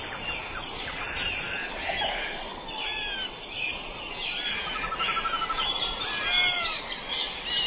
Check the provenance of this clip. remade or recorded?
recorded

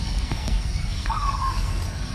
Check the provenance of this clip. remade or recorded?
remade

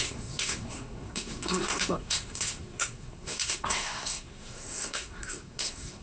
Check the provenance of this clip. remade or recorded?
remade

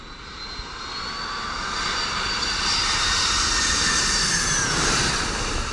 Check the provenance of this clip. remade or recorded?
recorded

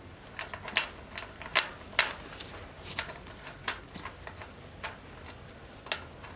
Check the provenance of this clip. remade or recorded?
recorded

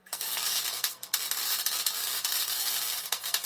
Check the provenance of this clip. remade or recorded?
remade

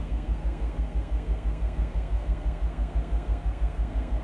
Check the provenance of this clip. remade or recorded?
remade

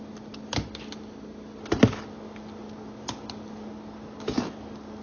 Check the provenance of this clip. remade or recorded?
recorded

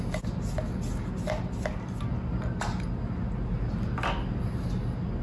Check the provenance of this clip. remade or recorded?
recorded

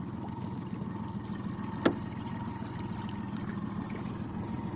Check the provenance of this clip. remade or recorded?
recorded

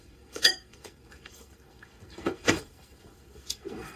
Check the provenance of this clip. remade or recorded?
remade